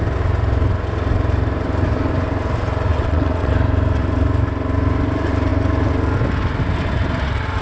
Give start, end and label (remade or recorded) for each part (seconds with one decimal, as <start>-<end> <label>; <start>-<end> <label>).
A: 0.0-2.9 recorded; 2.9-3.5 remade; 3.5-7.6 recorded